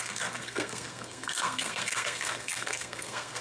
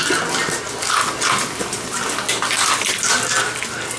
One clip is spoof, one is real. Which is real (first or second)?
second